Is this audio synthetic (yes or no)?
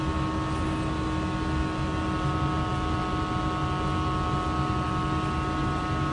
no